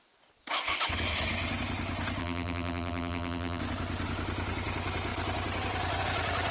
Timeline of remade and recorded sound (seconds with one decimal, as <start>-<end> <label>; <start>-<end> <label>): 0.0-2.2 recorded; 2.2-3.6 remade; 3.6-6.5 recorded